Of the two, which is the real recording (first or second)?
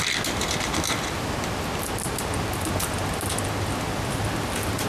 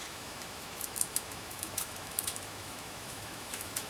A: first